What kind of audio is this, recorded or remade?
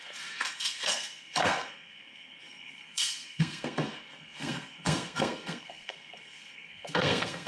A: remade